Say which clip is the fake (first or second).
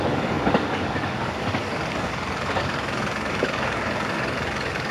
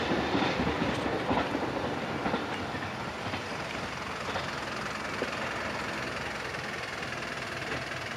first